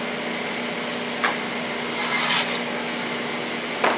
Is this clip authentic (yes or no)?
yes